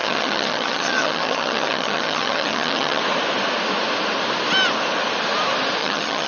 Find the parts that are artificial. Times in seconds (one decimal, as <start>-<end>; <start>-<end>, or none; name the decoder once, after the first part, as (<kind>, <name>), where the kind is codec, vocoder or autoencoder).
0.0-3.0 (vocoder, HiFi-GAN); 5.8-6.3